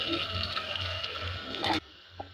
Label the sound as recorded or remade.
remade